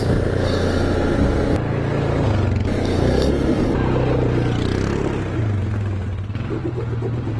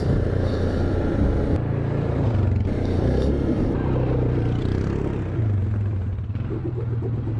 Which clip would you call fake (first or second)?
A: second